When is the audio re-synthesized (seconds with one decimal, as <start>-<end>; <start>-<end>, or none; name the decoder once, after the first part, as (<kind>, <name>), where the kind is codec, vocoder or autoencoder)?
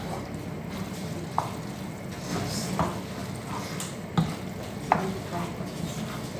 none